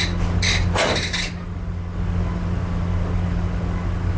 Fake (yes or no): no